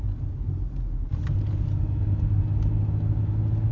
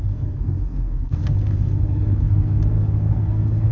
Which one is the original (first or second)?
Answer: first